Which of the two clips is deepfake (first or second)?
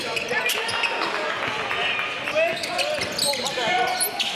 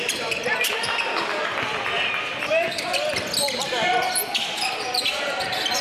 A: second